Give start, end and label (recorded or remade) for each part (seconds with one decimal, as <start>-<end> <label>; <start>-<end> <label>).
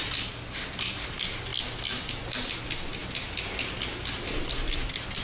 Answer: 0.0-5.2 recorded